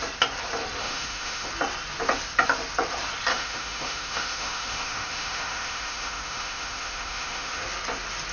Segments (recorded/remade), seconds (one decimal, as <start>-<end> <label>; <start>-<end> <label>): 0.0-0.8 recorded; 0.8-1.5 remade; 1.5-3.3 recorded; 3.3-7.6 remade; 7.6-8.3 recorded